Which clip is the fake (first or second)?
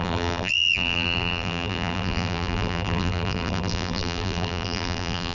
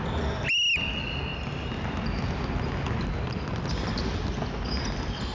first